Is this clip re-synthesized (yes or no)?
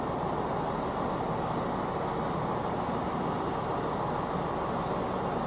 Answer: no